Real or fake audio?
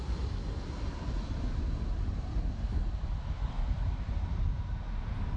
real